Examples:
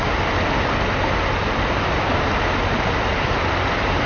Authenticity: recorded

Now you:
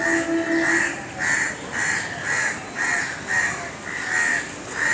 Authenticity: recorded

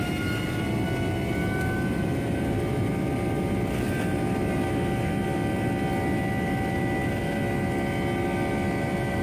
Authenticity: recorded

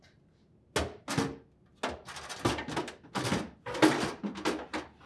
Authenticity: recorded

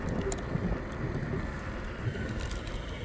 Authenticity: recorded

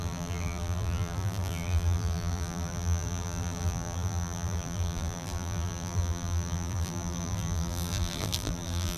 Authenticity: remade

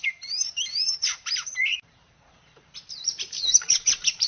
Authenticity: remade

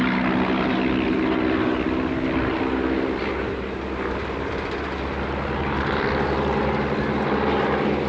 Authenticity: recorded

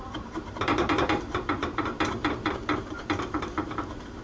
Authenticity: remade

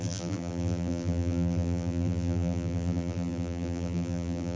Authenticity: remade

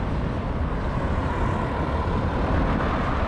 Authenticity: remade